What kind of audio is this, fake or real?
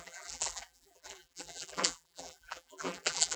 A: fake